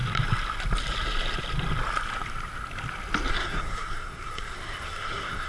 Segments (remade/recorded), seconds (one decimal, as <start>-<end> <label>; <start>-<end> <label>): 0.0-3.3 recorded; 3.3-5.5 remade

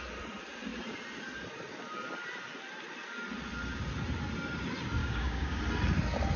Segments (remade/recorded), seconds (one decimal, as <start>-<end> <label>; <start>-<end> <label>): 0.0-5.0 recorded; 5.0-5.6 remade; 5.6-6.4 recorded

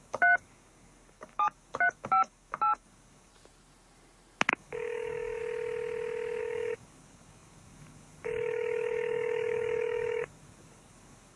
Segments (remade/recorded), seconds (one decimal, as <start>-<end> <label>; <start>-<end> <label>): 0.0-3.3 remade; 3.3-4.5 recorded; 4.5-5.4 remade; 5.4-6.4 recorded; 6.4-11.4 remade

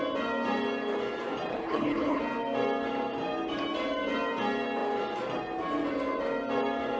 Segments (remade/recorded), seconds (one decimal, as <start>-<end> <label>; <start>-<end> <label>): 0.0-1.5 recorded; 1.5-2.2 remade; 2.2-7.0 recorded